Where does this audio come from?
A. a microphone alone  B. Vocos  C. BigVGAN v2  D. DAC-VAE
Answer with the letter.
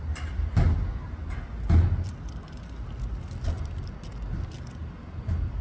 A